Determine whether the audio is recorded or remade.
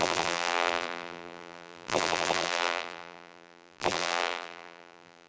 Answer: remade